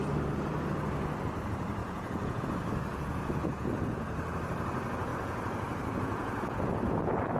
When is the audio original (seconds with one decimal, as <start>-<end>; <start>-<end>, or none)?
0.0-1.8; 2.4-2.9; 4.5-5.1